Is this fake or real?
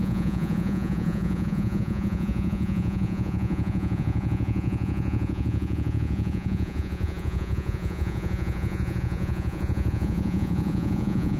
fake